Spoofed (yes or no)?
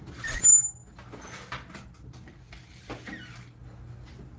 no